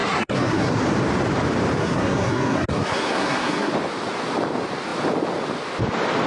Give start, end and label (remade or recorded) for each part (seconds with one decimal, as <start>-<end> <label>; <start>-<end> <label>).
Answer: 0.0-0.8 remade; 0.8-1.8 recorded; 1.8-3.7 remade; 3.7-6.3 recorded